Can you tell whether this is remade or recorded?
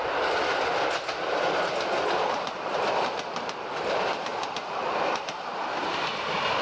recorded